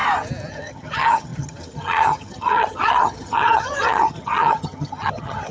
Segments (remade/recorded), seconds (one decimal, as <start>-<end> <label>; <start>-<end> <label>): 0.0-0.5 recorded; 0.5-5.5 remade